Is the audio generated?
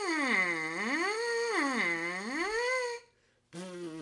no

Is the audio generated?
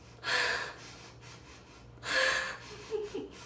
no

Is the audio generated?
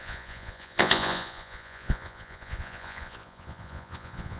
yes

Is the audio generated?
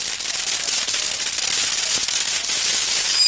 no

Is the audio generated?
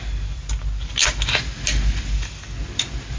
no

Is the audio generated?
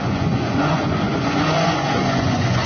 yes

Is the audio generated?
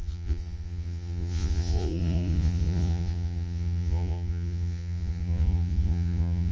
yes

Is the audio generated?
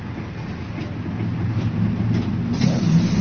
no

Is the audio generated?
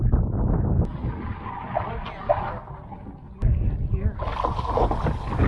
no